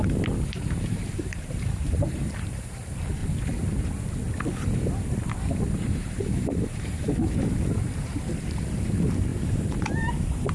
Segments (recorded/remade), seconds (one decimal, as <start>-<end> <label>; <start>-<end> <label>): 0.0-3.2 remade; 3.2-5.8 recorded; 5.8-10.5 remade